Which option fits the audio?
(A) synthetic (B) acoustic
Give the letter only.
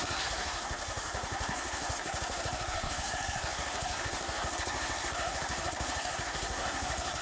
A